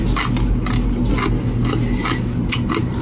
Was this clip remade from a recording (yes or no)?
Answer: no